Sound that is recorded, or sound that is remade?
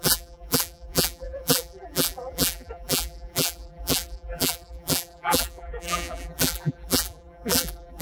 remade